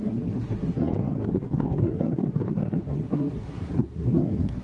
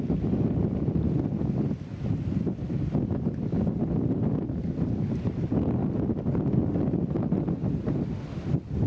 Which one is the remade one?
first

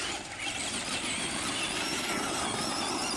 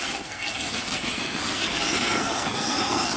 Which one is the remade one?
second